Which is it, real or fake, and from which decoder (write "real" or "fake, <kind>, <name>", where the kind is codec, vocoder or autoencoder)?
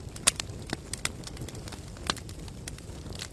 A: real